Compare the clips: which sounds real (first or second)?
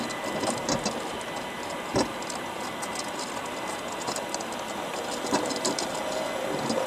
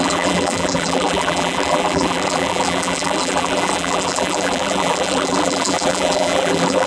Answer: first